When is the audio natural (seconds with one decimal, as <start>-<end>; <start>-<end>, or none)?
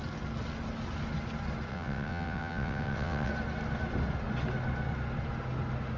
0.0-1.7; 3.3-6.0